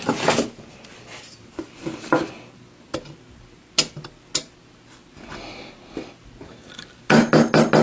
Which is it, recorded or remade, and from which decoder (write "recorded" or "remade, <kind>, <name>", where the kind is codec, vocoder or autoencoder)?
recorded